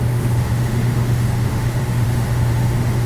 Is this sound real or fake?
fake